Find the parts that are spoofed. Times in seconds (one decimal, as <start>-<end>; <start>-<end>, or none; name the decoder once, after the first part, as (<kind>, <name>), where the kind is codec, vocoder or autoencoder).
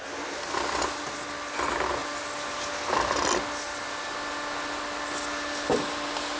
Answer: none